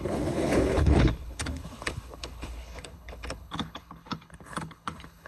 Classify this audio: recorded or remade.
remade